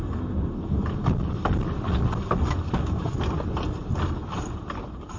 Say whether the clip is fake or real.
real